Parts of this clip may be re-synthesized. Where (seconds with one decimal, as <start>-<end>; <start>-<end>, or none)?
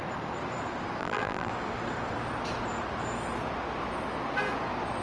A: 1.0-1.5